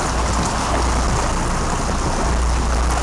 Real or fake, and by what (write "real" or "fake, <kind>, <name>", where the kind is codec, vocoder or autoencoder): real